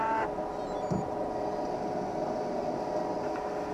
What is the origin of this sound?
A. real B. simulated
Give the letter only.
A